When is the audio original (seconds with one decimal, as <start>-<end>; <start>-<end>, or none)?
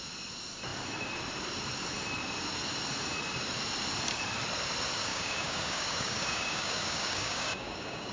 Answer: 0.0-5.1